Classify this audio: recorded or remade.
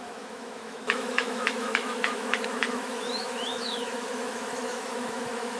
remade